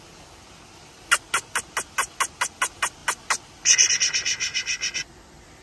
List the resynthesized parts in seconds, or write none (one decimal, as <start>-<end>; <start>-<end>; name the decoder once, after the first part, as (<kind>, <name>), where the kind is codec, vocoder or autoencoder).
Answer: none